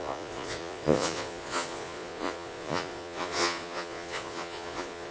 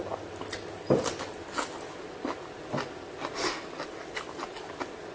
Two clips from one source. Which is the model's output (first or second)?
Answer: first